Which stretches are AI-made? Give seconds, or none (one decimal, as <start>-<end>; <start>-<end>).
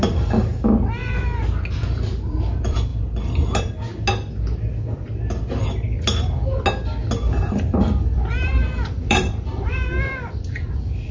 0.0-0.5; 1.8-2.9; 7.5-9.5; 10.0-11.1